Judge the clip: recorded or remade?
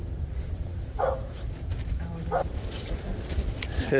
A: recorded